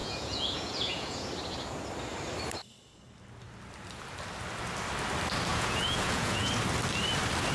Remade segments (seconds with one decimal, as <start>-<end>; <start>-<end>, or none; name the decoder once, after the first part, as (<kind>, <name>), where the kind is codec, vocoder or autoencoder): 0.0-1.3 (vocoder, Vocos); 5.5-6.5